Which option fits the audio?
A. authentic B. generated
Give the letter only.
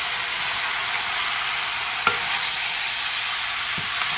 B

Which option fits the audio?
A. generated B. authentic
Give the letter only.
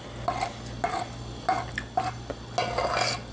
B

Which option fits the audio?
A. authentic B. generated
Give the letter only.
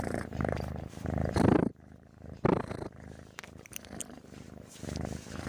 B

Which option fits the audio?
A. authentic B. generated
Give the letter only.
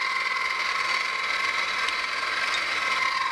A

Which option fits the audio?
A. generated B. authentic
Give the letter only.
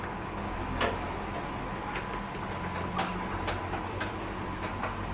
B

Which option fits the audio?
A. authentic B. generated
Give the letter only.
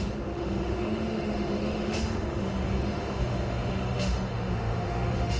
B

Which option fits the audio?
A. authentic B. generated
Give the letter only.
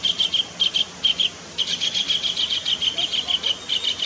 A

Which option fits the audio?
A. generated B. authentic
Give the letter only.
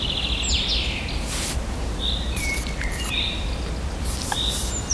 B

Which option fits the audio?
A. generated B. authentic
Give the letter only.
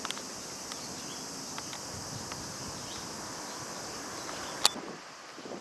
B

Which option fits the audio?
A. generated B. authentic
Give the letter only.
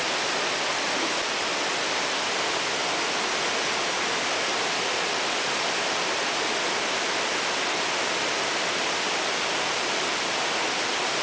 B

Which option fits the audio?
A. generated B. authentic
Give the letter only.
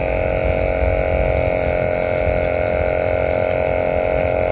B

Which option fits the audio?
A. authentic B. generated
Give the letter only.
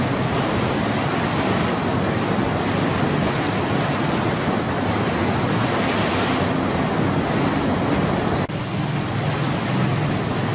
A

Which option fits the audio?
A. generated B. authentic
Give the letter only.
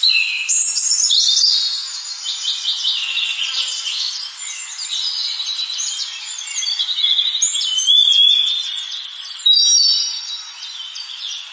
B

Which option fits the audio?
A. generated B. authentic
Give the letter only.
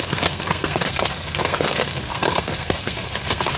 A